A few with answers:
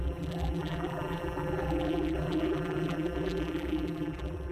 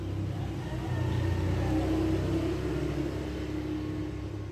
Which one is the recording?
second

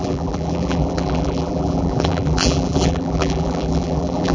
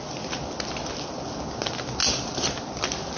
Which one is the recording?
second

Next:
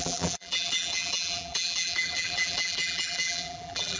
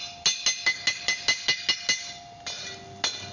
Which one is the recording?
second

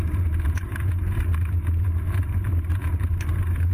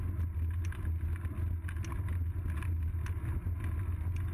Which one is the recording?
second